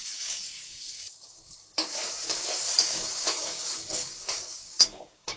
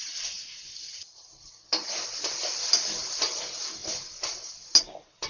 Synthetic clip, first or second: first